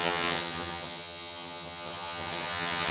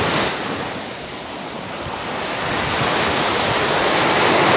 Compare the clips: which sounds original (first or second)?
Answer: second